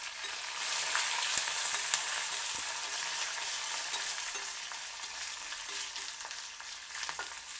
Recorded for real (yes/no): yes